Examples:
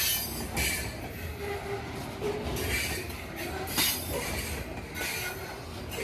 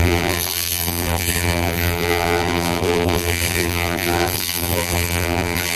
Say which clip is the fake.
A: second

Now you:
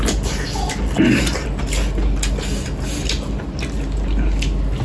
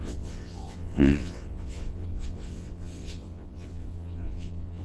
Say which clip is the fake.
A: second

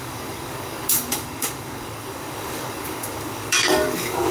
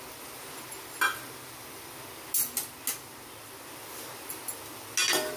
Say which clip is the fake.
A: first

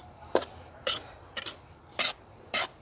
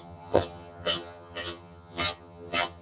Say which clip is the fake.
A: second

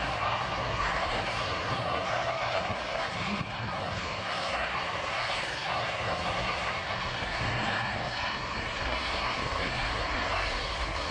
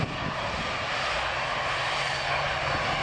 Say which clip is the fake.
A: first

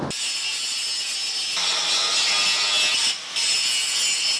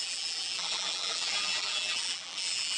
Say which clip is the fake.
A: second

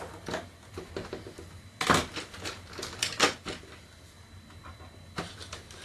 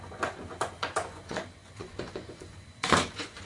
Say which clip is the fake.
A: second